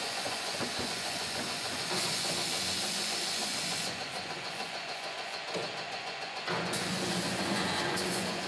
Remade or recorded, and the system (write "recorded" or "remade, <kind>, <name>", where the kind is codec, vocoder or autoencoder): remade, vocoder, Vocos